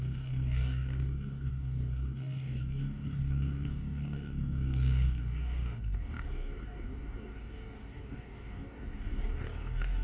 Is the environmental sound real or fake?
fake